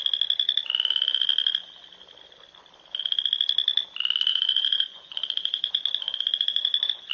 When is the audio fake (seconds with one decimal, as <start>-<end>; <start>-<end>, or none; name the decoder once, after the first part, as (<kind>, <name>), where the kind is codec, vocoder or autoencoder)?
4.3-7.1 (vocoder, Vocos)